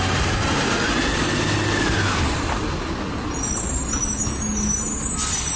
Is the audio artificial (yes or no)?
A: no